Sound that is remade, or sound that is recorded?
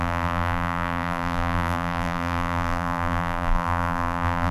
remade